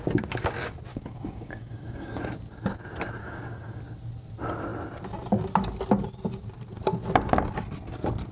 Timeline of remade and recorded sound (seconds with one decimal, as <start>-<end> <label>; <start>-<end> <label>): 0.0-0.9 recorded; 0.9-2.2 remade; 2.2-3.2 recorded; 3.2-3.8 remade; 3.8-8.3 recorded

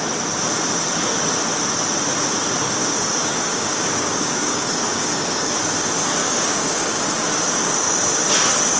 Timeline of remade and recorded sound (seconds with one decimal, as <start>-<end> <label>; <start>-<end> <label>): 0.0-2.8 recorded; 2.8-5.5 remade; 5.5-6.2 recorded; 6.2-7.7 remade; 7.7-8.8 recorded

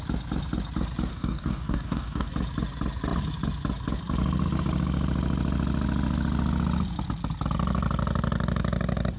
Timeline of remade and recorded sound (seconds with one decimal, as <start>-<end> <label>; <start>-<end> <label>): 0.0-1.1 recorded; 1.1-2.3 remade; 2.3-9.2 recorded

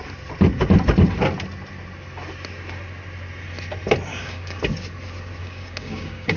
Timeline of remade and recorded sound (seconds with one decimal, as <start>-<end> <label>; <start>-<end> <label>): 0.0-4.1 recorded; 4.1-4.6 remade; 4.6-5.4 recorded; 5.4-6.4 remade

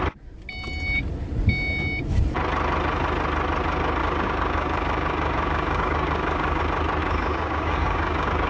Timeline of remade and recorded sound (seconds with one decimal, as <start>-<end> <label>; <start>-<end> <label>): 0.0-4.0 recorded; 4.0-6.6 remade; 6.6-7.0 recorded; 7.0-8.5 remade